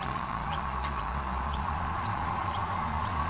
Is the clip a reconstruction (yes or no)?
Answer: yes